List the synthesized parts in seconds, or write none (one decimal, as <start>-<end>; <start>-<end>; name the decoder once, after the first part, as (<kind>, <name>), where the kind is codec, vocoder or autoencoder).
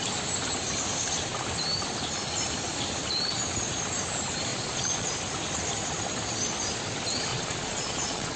4.5-5.1 (vocoder, Vocos); 7.3-8.4